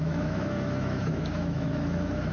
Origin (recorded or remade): remade